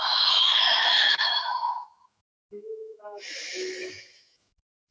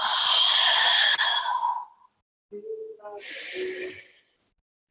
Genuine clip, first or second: second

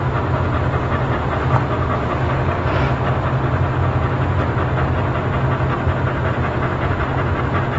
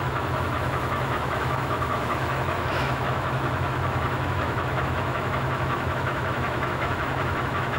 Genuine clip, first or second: first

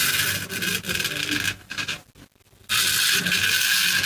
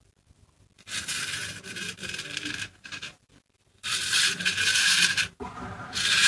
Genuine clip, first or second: first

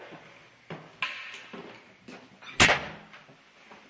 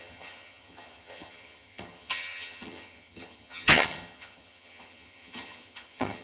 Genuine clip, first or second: first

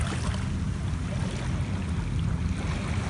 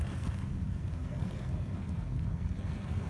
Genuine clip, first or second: first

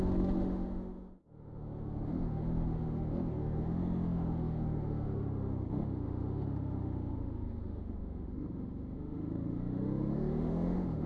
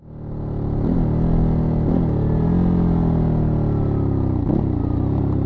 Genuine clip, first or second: second